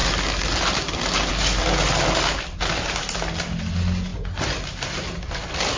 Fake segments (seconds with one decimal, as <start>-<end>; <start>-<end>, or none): none